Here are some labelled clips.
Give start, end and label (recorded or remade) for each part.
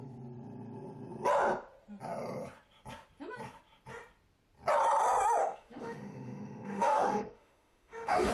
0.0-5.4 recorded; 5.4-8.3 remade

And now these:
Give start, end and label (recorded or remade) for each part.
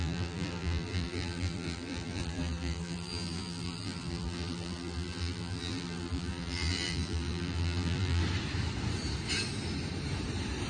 0.0-8.2 remade; 8.2-10.7 recorded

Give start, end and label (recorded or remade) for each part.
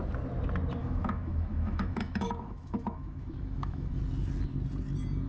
0.0-0.8 recorded; 0.8-4.0 remade; 4.0-5.3 recorded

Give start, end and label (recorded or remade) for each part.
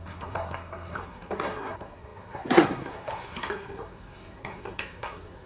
0.0-5.5 remade